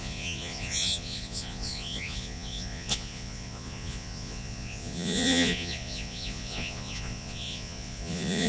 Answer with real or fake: fake